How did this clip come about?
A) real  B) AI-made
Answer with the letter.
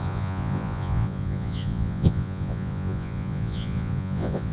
B